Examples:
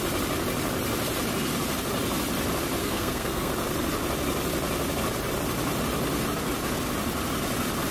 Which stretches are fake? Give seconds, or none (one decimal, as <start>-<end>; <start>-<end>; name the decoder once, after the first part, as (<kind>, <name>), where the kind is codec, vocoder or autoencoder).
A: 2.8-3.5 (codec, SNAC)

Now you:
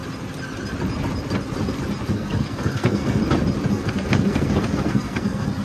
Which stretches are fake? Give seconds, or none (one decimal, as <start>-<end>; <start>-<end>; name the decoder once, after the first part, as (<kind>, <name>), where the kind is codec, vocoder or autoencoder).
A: 2.1-3.2 (codec, SNAC); 3.7-5.6

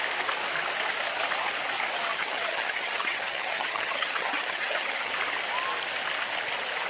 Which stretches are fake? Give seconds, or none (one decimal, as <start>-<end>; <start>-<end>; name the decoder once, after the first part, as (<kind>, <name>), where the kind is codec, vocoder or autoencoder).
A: 2.1-5.1 (vocoder, HiFi-GAN)

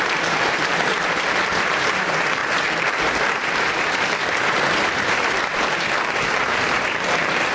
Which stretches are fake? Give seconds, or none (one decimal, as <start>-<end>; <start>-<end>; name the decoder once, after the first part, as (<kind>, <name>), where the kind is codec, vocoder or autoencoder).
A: 0.0-0.9 (vocoder, BigVGAN v2); 1.5-2.4; 3.0-7.5

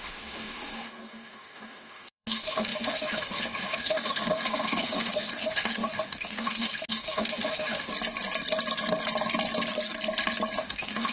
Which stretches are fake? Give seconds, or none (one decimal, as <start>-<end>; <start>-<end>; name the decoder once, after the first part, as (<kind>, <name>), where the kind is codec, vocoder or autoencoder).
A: 0.0-7.9 (autoencoder, DAC-VAE); 10.6-11.1